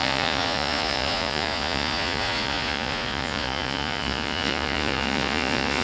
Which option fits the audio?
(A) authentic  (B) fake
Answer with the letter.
B